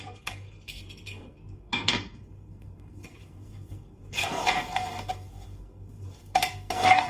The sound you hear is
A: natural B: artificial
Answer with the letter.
B